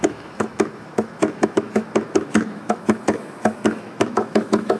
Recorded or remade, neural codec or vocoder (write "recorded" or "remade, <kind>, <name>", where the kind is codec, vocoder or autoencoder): remade, autoencoder, DAC-VAE